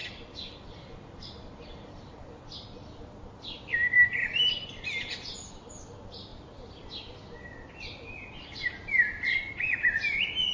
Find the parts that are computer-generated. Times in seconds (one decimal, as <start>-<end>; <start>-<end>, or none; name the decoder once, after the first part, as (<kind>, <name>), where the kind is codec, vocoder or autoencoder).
none